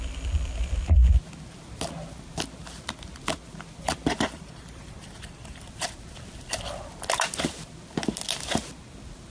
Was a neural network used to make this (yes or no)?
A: no